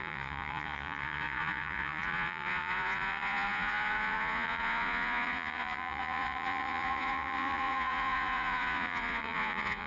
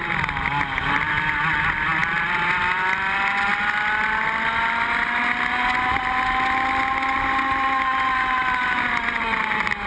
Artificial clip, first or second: first